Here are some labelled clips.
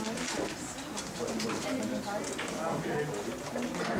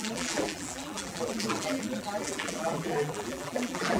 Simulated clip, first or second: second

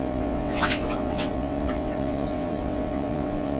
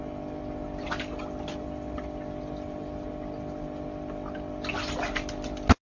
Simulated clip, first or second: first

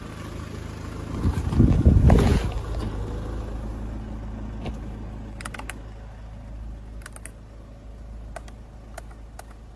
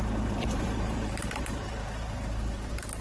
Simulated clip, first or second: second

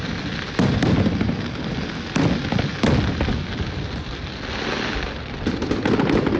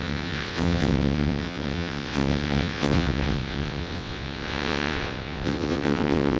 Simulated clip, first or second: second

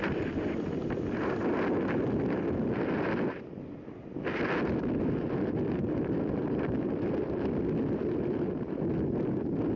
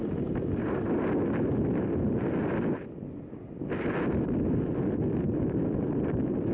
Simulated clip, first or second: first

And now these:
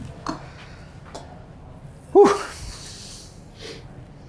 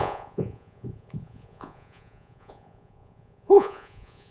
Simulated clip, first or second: second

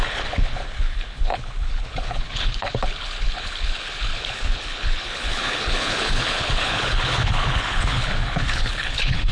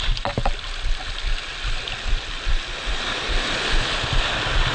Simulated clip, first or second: first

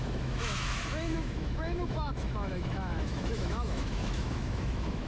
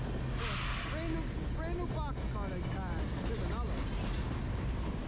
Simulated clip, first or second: first